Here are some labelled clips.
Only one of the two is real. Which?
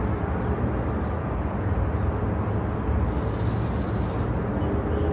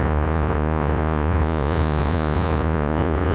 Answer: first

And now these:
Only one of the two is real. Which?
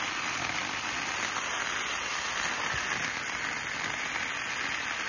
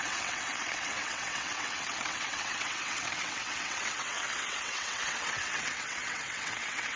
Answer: first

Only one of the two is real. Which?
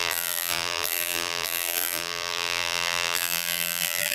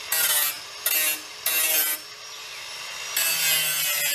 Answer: second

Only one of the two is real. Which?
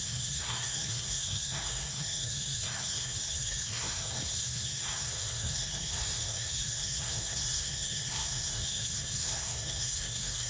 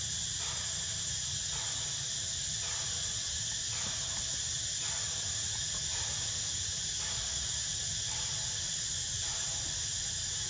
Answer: second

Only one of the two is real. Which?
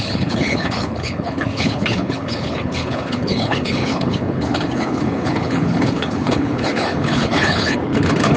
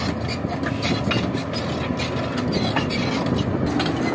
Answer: second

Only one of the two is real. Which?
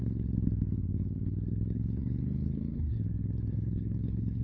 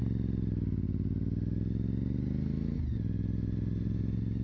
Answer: second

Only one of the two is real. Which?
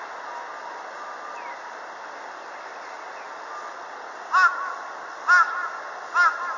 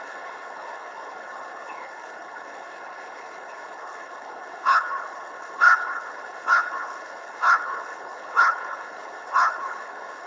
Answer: first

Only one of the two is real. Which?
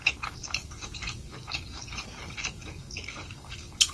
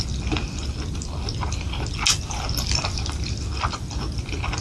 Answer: second